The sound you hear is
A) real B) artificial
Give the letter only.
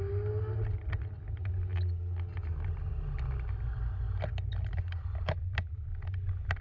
A